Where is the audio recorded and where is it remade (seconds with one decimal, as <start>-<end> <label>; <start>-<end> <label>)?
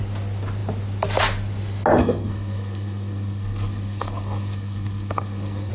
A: 0.0-2.0 recorded; 2.0-5.7 remade